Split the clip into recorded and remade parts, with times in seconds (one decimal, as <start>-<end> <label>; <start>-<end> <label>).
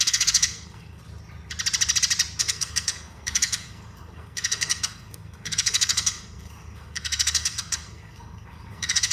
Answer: 0.0-1.0 remade; 1.0-2.4 recorded; 2.4-9.1 remade